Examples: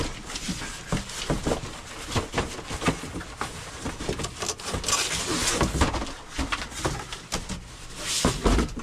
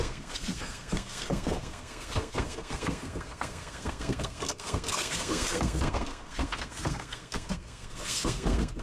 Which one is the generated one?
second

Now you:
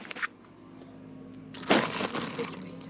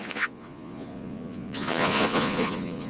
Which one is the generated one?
second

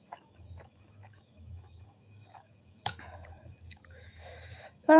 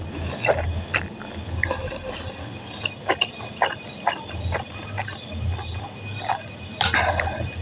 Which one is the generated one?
first